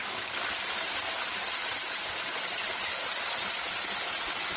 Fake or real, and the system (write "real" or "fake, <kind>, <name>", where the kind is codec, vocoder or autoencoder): real